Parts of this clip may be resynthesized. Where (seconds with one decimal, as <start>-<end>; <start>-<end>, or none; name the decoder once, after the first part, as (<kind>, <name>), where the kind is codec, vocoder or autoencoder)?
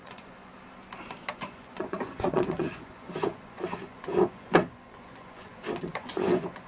0.0-0.5 (vocoder, Vocos); 1.3-6.7